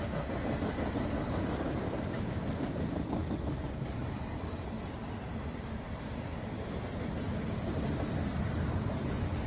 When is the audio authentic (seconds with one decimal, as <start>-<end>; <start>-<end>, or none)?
0.0-3.2; 6.6-9.5